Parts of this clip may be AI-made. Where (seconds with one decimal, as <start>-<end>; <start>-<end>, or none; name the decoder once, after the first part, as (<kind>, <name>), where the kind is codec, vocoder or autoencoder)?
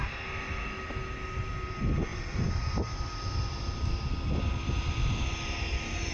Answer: none